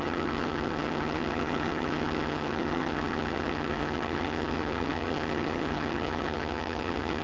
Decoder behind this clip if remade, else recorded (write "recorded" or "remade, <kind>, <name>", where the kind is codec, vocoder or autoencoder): remade, vocoder, HiFi-GAN